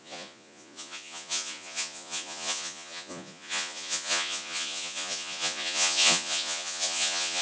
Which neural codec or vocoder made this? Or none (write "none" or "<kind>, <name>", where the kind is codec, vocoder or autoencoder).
vocoder, Vocos